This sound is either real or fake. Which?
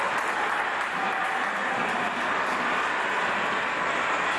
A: real